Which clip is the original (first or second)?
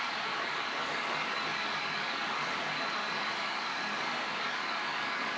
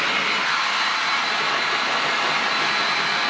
second